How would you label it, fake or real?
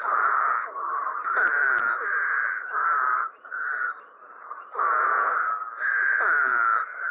fake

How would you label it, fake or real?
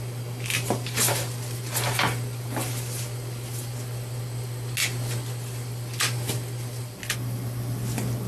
real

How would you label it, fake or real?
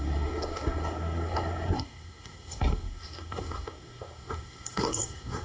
fake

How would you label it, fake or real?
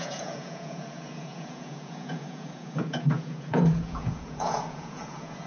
fake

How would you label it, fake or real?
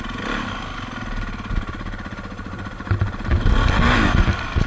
real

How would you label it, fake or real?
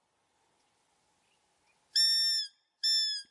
real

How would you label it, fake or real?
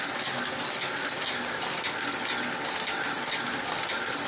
real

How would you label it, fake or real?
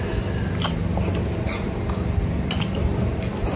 real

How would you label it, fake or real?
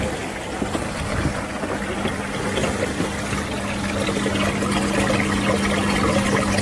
real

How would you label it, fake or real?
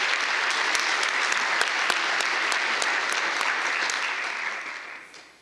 fake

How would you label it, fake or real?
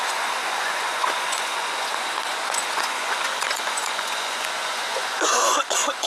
fake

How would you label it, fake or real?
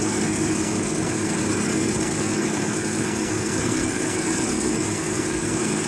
fake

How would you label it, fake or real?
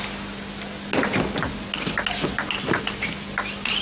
real